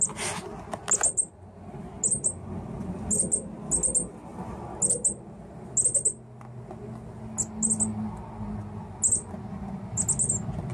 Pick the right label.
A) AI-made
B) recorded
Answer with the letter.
B